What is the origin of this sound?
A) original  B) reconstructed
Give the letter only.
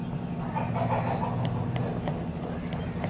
A